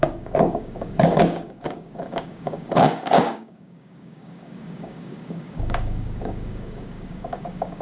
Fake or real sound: fake